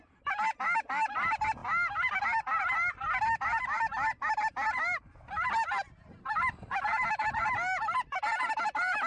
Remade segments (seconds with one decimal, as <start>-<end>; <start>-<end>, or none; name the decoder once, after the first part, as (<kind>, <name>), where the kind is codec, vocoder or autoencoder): none